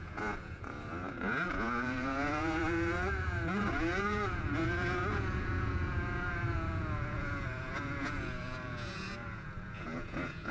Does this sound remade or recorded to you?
remade